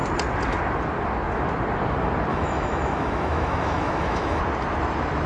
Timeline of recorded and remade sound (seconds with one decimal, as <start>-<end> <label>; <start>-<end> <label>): 0.0-2.3 recorded; 2.3-4.4 remade; 4.4-5.3 recorded